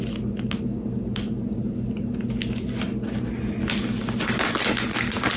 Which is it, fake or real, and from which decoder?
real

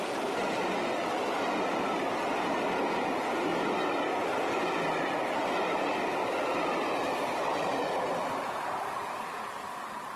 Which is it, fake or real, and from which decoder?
real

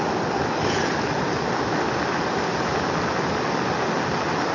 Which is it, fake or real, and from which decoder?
real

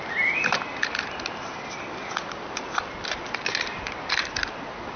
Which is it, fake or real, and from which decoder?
real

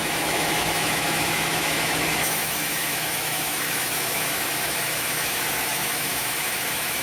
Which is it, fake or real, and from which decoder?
fake, autoencoder, DAC-VAE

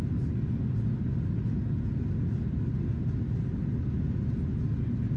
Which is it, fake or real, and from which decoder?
real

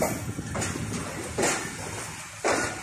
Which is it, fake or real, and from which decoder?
real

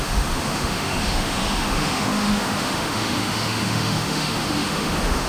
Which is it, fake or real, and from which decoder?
fake, autoencoder, DAC-VAE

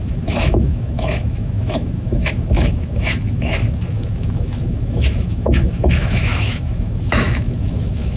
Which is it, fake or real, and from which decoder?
fake, autoencoder, DAC-VAE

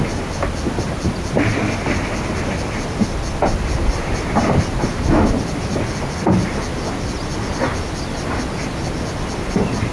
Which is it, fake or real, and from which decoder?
real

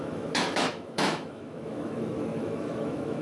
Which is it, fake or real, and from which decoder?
fake, autoencoder, DAC-VAE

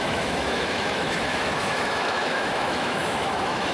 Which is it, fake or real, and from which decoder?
fake, autoencoder, DAC-VAE